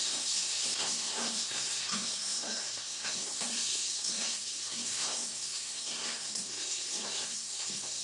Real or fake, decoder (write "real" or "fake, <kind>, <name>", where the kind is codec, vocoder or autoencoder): fake, codec, SNAC